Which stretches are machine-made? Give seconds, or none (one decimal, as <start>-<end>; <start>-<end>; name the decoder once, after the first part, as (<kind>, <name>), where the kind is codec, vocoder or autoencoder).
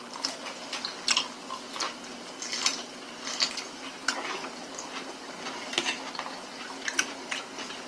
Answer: none